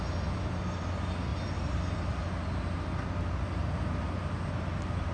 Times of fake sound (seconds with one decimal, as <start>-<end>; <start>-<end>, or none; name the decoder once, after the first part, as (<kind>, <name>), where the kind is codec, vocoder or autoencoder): none

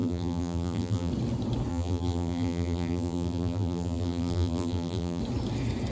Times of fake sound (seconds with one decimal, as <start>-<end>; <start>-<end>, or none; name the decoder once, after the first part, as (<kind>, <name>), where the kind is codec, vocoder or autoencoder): 0.0-1.1 (vocoder, BigVGAN v2); 1.7-5.2

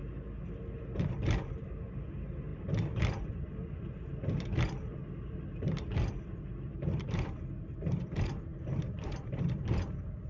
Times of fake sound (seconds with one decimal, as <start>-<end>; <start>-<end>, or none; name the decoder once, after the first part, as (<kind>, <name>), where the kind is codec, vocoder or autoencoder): 1.7-10.3 (vocoder, BigVGAN v2)

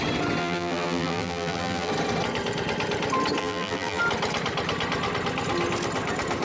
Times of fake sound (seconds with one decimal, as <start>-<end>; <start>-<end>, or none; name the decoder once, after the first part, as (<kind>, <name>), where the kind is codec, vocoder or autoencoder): 0.4-1.9 (vocoder, BigVGAN v2); 3.4-4.0

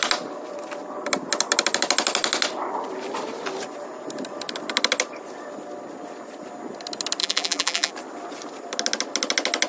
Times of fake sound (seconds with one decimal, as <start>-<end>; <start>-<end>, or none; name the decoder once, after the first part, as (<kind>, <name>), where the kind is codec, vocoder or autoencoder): 7.2-7.9 (vocoder, BigVGAN v2)

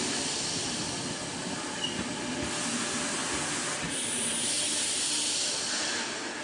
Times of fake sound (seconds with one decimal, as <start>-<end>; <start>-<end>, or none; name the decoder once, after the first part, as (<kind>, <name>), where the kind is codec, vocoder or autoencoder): none

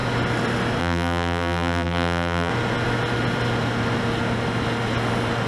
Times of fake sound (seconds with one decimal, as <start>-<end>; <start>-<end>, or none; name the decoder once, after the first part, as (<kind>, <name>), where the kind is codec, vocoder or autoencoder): 0.8-2.5 (vocoder, BigVGAN v2)